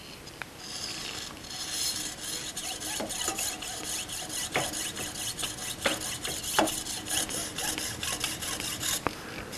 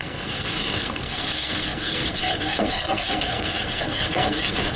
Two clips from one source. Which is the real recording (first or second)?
first